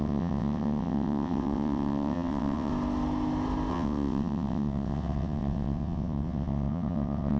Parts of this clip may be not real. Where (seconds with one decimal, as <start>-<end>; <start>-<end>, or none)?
0.0-2.7; 3.7-7.4